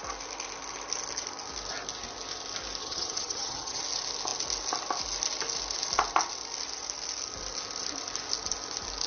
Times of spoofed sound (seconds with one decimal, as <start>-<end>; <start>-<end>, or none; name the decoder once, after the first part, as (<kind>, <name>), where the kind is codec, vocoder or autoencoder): 2.8-3.8 (vocoder, HiFi-GAN)